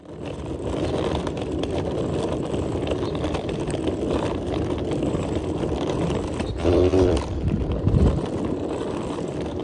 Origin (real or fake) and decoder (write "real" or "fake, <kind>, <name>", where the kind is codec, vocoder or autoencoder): fake, vocoder, BigVGAN v2